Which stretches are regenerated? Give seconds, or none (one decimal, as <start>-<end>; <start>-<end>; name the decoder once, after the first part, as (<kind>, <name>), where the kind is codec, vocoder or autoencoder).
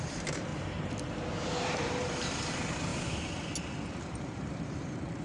0.0-0.5 (vocoder, BigVGAN v2); 1.1-2.9; 4.0-5.2